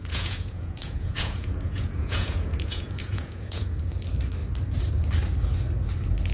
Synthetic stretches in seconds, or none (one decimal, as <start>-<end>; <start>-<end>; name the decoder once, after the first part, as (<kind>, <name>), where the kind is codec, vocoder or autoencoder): 0.0-3.8 (vocoder, Vocos)